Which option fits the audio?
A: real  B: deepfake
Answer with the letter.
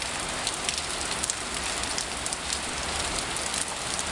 A